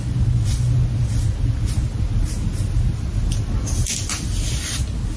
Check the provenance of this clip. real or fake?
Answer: real